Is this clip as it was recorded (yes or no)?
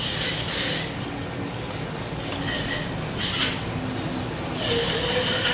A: yes